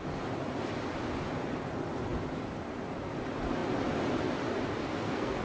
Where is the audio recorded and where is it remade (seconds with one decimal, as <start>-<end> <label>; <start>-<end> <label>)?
0.0-4.8 recorded; 4.8-5.4 remade